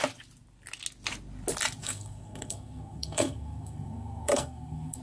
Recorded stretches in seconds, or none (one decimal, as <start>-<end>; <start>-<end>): 0.0-1.8